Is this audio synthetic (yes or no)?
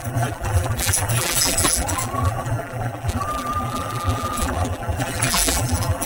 yes